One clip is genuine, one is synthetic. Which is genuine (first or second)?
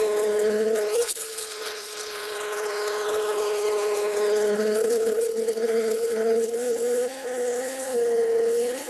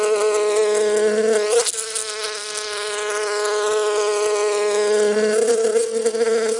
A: second